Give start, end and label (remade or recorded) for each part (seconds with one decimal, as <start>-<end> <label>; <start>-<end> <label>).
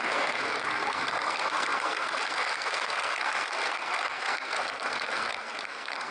0.0-6.1 remade